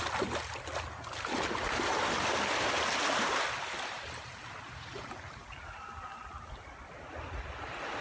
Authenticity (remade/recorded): recorded